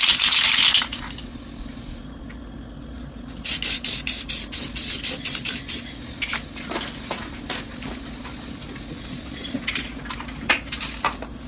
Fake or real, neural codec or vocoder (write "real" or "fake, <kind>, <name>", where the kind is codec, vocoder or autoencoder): real